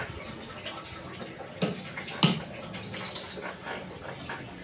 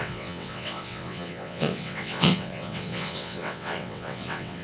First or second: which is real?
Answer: first